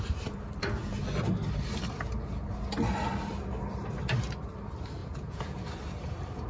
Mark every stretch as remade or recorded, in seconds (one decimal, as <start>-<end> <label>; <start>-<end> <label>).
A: 0.0-5.0 recorded; 5.0-5.6 remade; 5.6-6.5 recorded